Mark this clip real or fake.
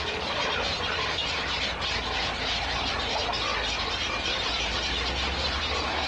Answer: real